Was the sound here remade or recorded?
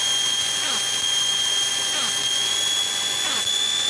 remade